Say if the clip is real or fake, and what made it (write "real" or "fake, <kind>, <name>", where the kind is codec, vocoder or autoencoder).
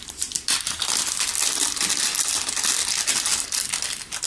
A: real